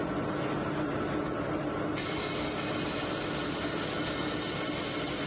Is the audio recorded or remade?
recorded